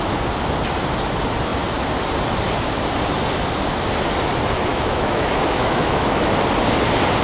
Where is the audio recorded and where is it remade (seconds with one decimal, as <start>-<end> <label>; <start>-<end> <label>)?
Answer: 0.0-4.7 recorded; 4.7-6.3 remade; 6.3-7.2 recorded